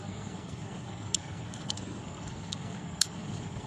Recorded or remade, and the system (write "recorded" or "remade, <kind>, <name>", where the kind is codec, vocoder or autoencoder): remade, codec, SNAC